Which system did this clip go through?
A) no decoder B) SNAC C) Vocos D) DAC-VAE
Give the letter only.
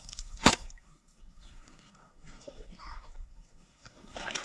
B